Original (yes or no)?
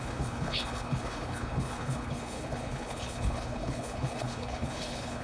no